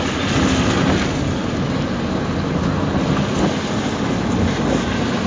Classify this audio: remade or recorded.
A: recorded